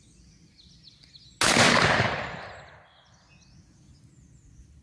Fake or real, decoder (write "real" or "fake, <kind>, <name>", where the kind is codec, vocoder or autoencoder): real